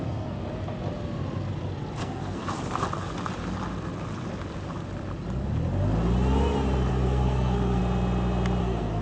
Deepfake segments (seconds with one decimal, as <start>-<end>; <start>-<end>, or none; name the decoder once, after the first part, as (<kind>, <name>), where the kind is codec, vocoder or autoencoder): 0.0-0.4 (codec, SNAC); 2.0-2.4; 6.9-7.8; 8.6-9.0